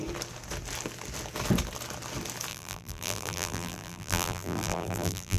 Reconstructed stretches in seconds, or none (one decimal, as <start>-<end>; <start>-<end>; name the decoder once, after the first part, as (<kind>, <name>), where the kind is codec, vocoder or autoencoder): 2.5-5.4 (vocoder, BigVGAN v2)